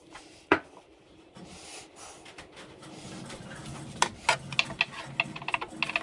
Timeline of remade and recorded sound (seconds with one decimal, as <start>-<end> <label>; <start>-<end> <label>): 0.0-1.6 remade; 1.6-6.0 recorded